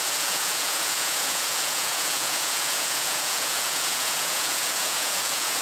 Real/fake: fake